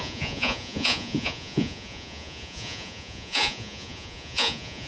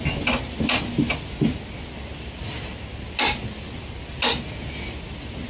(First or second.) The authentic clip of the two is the second